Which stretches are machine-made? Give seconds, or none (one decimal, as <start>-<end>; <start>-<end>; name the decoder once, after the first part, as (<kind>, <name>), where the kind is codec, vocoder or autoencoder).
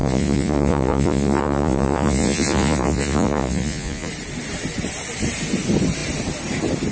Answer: 0.0-4.1 (vocoder, Vocos)